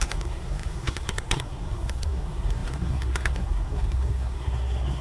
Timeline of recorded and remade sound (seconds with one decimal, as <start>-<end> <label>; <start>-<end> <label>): 0.0-5.0 remade

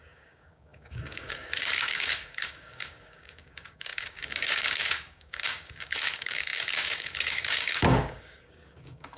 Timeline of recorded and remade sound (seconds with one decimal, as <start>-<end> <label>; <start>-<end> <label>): 0.0-9.2 remade

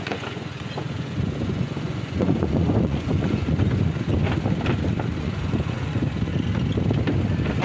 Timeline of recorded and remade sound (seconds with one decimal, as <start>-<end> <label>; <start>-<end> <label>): 0.0-4.1 remade; 4.1-5.2 recorded; 5.2-6.3 remade; 6.3-7.6 recorded

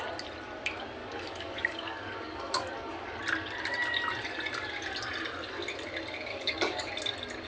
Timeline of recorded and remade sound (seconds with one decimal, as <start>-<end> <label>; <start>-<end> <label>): 0.0-1.0 recorded; 1.0-3.2 remade; 3.2-6.3 recorded; 6.3-6.9 remade; 6.9-7.5 recorded

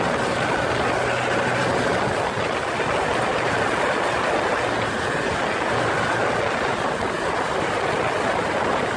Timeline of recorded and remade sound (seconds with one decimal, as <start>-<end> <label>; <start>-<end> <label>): 0.0-9.0 recorded